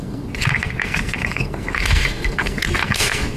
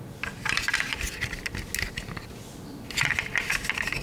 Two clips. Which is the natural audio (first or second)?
second